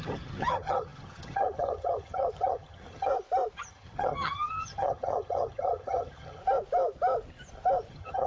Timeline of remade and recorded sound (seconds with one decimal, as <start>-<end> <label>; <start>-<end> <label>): 0.0-3.1 remade; 3.1-3.6 recorded; 3.6-6.4 remade; 6.4-7.9 recorded; 7.9-8.3 remade